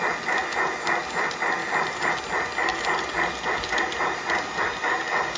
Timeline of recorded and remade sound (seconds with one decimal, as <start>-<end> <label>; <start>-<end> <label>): 0.0-5.4 recorded